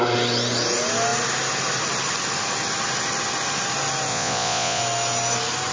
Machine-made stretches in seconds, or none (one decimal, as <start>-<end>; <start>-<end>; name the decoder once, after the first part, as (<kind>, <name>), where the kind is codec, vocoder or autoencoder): 4.1-4.8 (vocoder, Vocos)